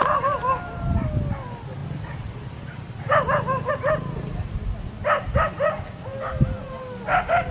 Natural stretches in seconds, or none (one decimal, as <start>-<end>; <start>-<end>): 0.0-7.5